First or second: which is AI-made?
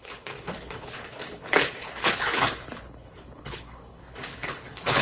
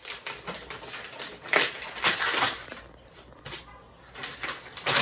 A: first